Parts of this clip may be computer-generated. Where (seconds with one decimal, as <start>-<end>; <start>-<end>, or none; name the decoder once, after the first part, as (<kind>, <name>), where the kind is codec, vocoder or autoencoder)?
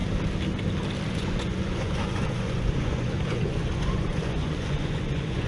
1.1-5.5 (vocoder, Vocos)